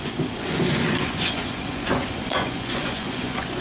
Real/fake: fake